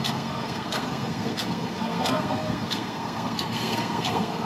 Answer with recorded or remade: remade